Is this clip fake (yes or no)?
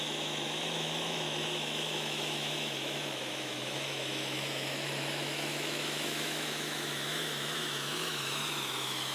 yes